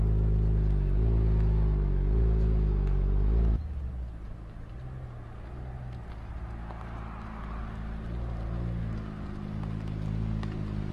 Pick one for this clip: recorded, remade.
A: recorded